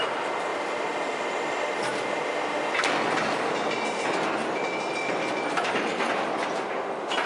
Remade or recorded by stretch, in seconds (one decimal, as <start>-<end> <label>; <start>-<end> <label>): 0.0-7.3 recorded